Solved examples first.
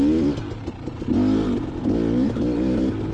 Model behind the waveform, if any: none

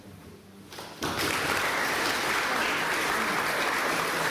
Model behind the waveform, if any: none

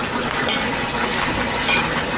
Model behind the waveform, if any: none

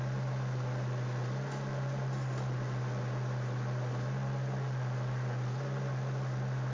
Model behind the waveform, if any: none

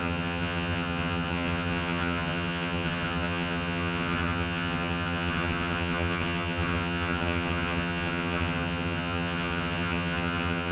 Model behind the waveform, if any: vocoder, HiFi-GAN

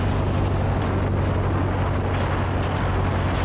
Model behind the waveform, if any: none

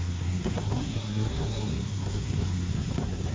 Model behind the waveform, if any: codec, SNAC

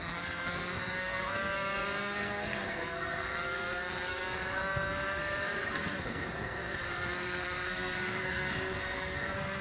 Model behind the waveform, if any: codec, SNAC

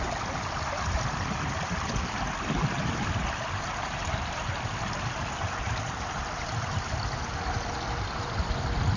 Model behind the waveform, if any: none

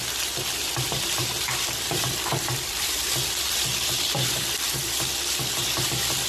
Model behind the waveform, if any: vocoder, BigVGAN v2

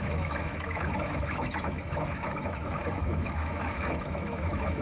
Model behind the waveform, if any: autoencoder, DAC-VAE